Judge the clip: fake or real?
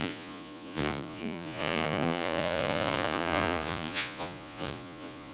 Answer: fake